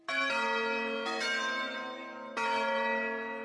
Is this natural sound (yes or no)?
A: yes